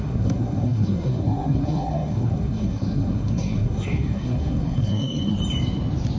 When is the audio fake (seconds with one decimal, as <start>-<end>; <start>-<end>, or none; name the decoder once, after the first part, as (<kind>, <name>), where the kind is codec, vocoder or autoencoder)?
0.0-5.4 (codec, SNAC)